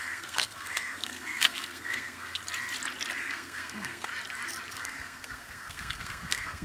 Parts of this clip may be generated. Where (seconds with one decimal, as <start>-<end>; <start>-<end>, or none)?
0.0-2.4; 3.2-4.1; 4.7-6.6